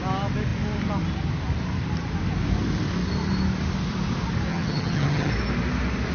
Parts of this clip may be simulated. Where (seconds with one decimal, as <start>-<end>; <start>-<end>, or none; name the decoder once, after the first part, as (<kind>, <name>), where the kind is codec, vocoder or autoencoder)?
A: 4.5-5.3 (vocoder, HiFi-GAN)